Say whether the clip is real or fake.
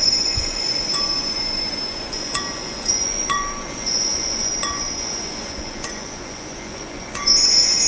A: fake